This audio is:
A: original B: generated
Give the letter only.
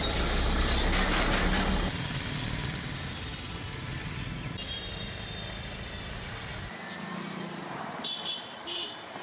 B